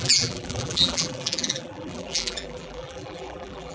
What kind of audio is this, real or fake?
fake